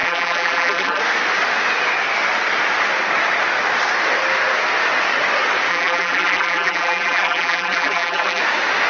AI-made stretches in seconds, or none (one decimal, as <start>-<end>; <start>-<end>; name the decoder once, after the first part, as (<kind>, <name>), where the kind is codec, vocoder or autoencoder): 0.0-1.0 (vocoder, BigVGAN v2); 5.7-8.4